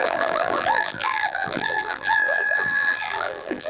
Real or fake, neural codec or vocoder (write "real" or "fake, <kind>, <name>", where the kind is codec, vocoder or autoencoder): fake, vocoder, BigVGAN v2